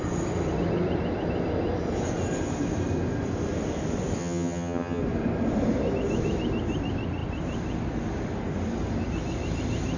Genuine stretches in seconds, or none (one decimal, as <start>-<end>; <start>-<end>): 0.0-4.2; 5.0-10.0